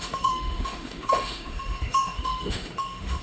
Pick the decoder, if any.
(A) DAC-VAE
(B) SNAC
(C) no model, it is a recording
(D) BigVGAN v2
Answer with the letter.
A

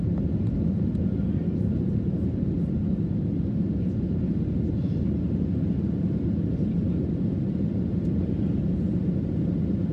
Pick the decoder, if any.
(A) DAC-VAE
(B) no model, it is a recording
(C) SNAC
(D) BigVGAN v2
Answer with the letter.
B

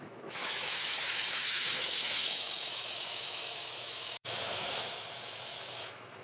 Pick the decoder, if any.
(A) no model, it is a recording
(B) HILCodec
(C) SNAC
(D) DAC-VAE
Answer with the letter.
D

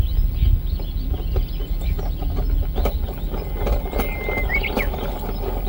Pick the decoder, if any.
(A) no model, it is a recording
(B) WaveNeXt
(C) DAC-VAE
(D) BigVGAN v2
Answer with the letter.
A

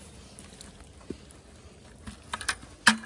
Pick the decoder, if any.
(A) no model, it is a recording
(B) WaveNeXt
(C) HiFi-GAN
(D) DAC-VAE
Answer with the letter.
A